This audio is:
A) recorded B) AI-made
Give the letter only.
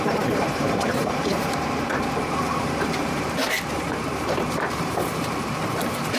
B